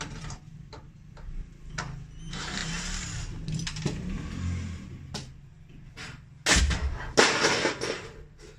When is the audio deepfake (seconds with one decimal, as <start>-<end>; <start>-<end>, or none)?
none